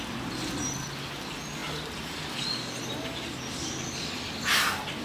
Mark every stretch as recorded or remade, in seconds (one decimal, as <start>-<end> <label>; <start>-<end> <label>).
0.0-5.0 recorded